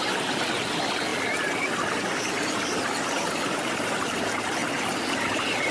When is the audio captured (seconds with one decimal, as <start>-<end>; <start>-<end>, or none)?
0.0-5.7